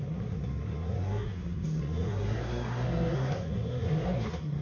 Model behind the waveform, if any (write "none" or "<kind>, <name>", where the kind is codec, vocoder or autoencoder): codec, SNAC